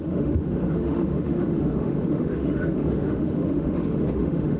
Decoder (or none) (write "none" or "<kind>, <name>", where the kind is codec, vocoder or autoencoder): autoencoder, DAC-VAE